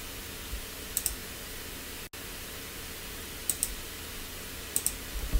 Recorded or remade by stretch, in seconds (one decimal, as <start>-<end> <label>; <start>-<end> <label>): 0.0-5.4 recorded